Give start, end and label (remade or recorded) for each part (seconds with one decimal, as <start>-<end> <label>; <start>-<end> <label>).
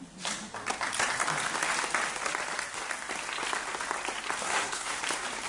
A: 0.0-4.4 recorded; 4.4-5.0 remade; 5.0-5.5 recorded